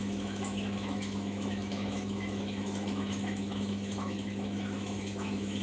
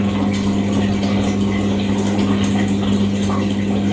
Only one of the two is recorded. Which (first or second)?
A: second